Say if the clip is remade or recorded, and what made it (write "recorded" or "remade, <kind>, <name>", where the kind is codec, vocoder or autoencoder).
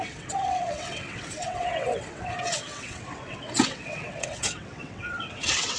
remade, vocoder, WaveNeXt